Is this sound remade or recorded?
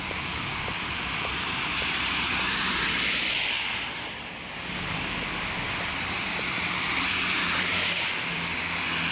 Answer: remade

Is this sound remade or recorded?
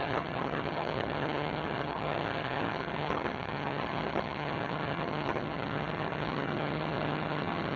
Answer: remade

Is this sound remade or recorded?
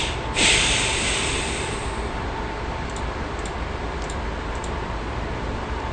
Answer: recorded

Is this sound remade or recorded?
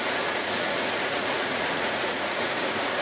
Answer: remade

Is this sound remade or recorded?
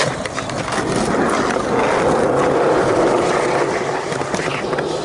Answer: recorded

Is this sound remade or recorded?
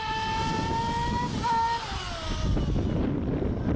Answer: recorded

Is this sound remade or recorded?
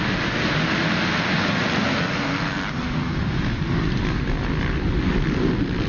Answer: recorded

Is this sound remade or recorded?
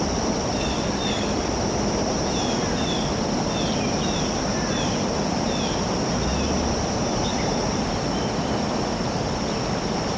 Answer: recorded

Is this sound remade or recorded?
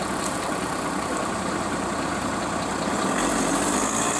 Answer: remade